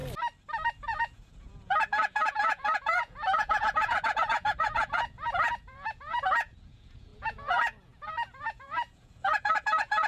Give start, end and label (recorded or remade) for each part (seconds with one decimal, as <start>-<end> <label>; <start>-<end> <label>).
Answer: 0.0-0.8 recorded; 0.8-10.1 remade

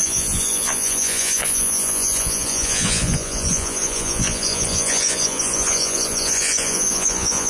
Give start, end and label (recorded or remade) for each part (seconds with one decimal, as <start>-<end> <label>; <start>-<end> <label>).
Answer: 0.0-7.5 remade

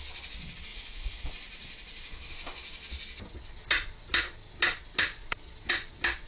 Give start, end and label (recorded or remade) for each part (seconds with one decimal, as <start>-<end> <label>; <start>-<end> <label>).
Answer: 0.0-0.7 recorded; 0.7-1.2 remade; 1.2-6.3 recorded

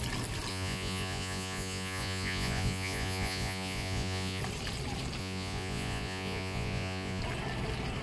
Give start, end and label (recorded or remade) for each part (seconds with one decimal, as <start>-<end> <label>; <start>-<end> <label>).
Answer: 0.0-0.5 recorded; 0.5-4.4 remade; 4.4-5.2 recorded; 5.2-7.2 remade; 7.2-8.0 recorded